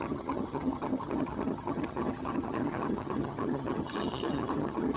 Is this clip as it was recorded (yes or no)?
no